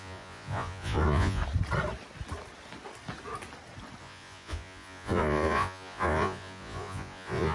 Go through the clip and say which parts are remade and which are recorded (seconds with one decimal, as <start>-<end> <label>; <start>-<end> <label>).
0.0-1.4 remade; 1.4-4.0 recorded; 4.0-7.5 remade